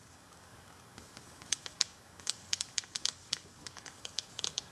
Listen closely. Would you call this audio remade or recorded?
remade